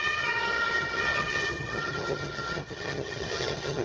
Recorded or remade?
remade